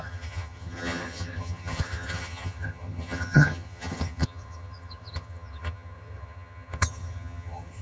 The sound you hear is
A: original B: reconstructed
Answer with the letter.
B